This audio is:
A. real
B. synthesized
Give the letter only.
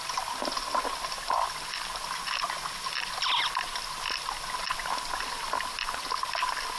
A